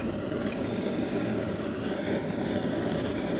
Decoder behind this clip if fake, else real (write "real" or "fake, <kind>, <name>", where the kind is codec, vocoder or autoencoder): fake, codec, DAC